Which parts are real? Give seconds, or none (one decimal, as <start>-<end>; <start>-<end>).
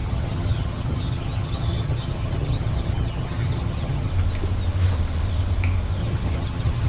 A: 4.1-6.0